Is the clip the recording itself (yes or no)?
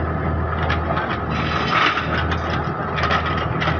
yes